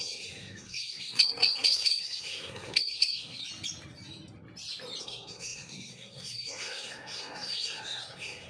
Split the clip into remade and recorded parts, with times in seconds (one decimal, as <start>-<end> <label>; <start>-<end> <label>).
0.0-3.4 remade; 3.4-5.0 recorded; 5.0-8.5 remade